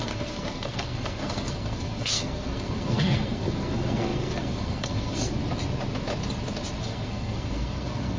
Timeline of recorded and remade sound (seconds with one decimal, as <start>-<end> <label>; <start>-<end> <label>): 0.0-5.4 remade; 5.4-6.8 recorded; 6.8-8.2 remade